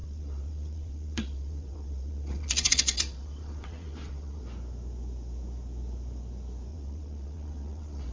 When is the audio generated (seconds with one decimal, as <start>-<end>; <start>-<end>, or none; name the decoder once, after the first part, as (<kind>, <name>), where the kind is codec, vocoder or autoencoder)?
0.0-4.4 (vocoder, WaveNeXt); 6.7-8.1